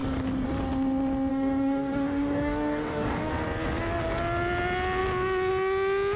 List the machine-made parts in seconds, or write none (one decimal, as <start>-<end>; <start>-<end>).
1.3-3.3